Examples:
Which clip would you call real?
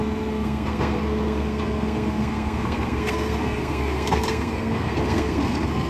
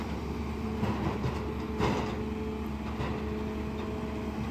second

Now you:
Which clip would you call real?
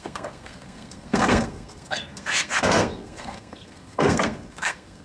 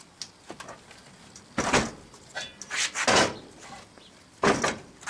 second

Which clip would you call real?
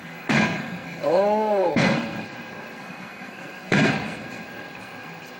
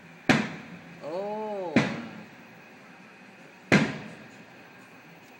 second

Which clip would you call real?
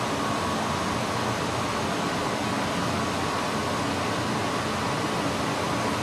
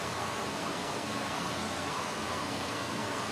first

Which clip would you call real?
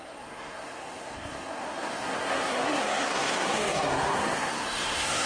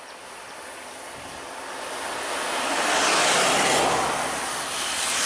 second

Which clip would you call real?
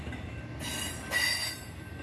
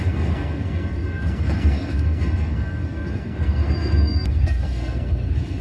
first